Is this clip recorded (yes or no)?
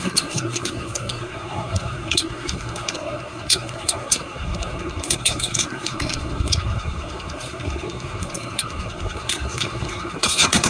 no